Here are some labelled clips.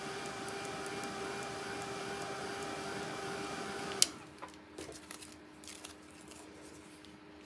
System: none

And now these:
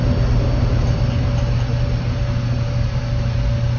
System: none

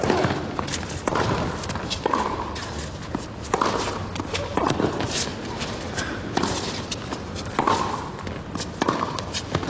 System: none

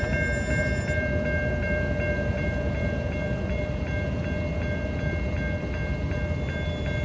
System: none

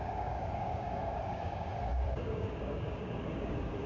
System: codec, DAC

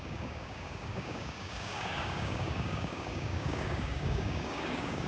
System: codec, DAC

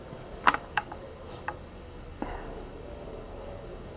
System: codec, DAC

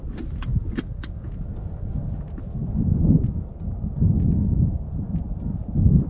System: none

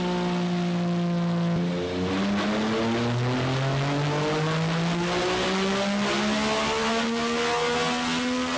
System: none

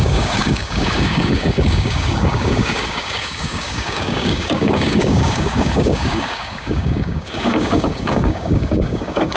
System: codec, DAC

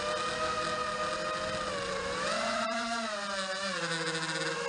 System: none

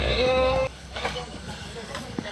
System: codec, DAC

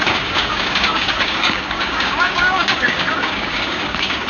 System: codec, DAC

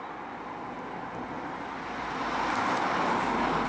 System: none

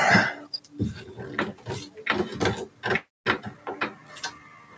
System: none